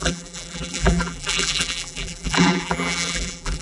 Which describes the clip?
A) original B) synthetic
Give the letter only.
B